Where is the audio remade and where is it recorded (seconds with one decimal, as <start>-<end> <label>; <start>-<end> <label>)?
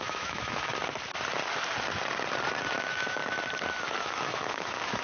0.0-0.7 remade; 0.7-2.8 recorded; 2.8-3.2 remade; 3.2-4.0 recorded; 4.0-5.0 remade